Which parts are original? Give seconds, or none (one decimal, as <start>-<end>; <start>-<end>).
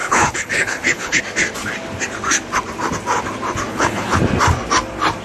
1.2-3.7; 4.2-5.2